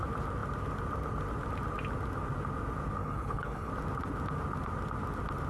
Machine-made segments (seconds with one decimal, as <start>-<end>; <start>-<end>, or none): 3.0-3.7

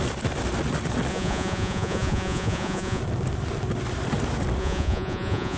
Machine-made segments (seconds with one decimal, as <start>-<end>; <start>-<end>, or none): 1.1-3.0; 4.6-5.6

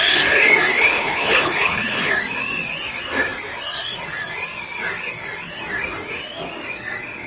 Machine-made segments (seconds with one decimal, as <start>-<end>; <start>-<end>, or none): 0.7-2.1

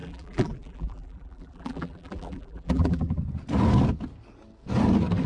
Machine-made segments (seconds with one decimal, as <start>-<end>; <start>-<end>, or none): 0.0-3.2

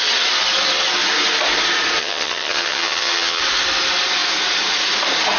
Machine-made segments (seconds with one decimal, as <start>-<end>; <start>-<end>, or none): 2.0-3.4

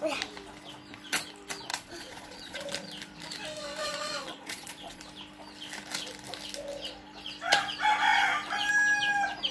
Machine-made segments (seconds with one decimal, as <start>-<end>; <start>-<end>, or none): 1.7-2.6; 3.8-5.0